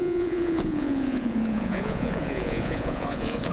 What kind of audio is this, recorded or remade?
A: remade